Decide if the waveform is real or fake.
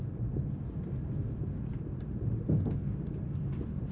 real